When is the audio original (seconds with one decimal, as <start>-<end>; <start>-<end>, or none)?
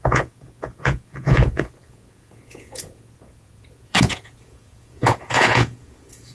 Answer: none